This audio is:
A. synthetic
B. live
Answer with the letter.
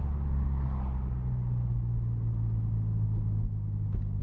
B